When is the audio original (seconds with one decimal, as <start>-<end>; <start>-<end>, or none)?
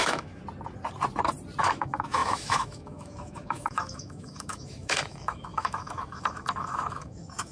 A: 0.4-1.6